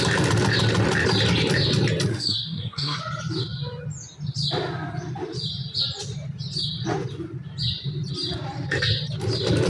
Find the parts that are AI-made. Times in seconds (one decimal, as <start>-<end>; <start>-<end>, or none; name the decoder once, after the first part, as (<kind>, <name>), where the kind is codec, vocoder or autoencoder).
2.1-3.0 (codec, SNAC)